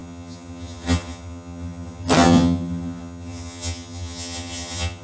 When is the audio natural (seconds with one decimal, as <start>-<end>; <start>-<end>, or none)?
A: none